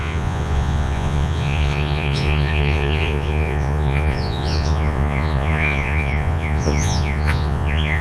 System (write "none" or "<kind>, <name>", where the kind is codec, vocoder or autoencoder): vocoder, Vocos